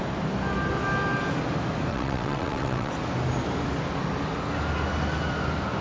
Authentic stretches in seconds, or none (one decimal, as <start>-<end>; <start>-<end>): 0.0-1.9; 2.9-5.8